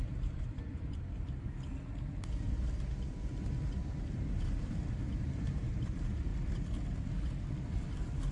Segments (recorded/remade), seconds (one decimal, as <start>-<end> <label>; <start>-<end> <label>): 0.0-6.3 remade; 6.3-7.5 recorded; 7.5-8.3 remade